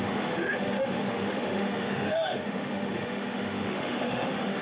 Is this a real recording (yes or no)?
no